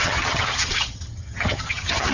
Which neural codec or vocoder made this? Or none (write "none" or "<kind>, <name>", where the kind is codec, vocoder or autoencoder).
vocoder, HiFi-GAN